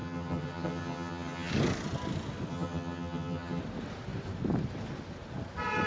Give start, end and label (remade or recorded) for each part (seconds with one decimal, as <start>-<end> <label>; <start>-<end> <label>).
0.0-1.5 remade; 1.5-2.5 recorded; 2.5-3.6 remade; 3.6-5.9 recorded